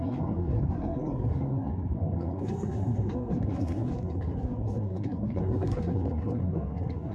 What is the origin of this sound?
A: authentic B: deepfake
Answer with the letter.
B